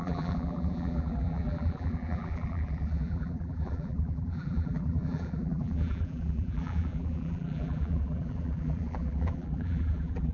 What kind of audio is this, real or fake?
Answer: fake